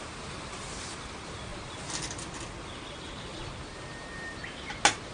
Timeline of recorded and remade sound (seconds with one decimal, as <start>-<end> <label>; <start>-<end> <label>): 0.0-5.1 recorded